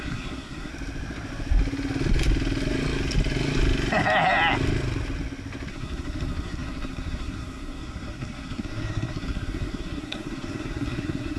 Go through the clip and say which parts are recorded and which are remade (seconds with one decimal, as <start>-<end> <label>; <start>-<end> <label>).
0.0-0.7 remade; 0.7-5.7 recorded; 5.7-11.4 remade